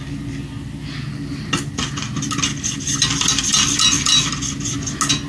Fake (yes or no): no